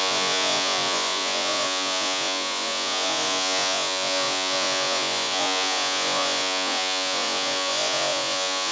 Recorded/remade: remade